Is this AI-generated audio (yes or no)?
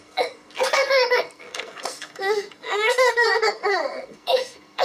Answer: yes